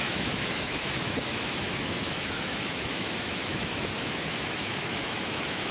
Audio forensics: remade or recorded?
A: remade